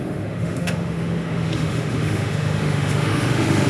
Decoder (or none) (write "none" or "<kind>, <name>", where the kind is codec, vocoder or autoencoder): autoencoder, DAC-VAE